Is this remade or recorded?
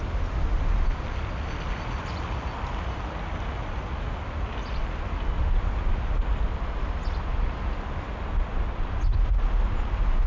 recorded